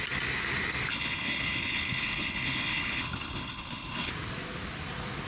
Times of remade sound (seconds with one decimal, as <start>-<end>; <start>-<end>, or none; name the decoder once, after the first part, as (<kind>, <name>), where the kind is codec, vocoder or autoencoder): 0.9-4.1 (codec, HILCodec)